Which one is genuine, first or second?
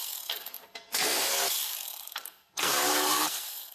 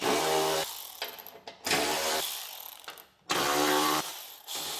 second